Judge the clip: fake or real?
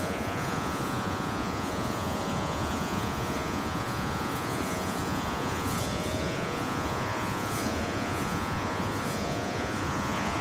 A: fake